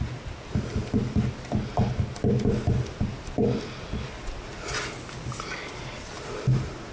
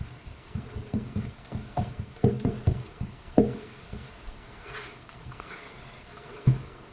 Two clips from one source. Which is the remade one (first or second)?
second